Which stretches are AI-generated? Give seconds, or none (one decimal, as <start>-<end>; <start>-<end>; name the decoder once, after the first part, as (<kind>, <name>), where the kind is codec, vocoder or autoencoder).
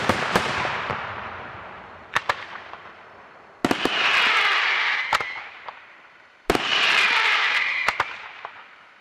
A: 0.0-2.2 (vocoder, BigVGAN v2); 3.2-3.6; 5.4-9.0